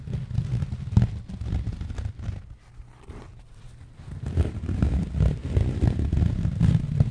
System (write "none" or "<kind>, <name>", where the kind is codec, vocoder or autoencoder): none